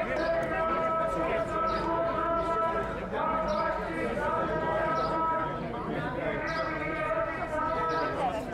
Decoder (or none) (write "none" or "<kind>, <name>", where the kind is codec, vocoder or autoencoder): none